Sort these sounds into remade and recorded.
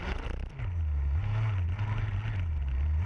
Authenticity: recorded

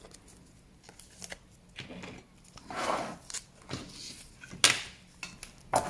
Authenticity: recorded